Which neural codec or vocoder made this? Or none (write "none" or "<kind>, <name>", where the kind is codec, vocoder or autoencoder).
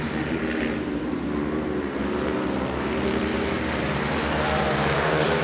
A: vocoder, BigVGAN v2